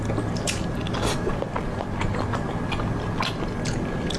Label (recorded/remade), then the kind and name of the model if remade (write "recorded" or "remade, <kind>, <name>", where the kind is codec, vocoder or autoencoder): recorded